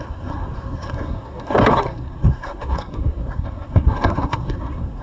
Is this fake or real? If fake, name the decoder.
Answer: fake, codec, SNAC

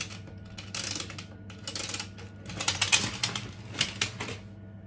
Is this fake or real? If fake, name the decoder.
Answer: real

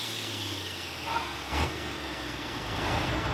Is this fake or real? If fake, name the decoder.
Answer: fake, codec, SNAC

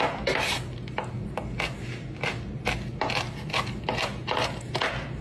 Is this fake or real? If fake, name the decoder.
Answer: real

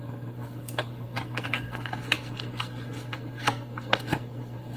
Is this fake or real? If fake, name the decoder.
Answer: fake, codec, SNAC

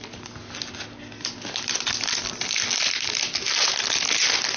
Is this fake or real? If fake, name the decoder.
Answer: real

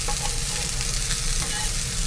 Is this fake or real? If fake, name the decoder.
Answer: real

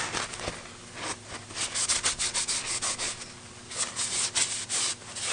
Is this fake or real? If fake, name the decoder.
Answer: real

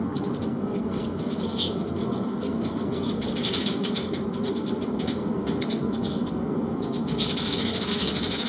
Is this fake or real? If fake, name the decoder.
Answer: fake, codec, SNAC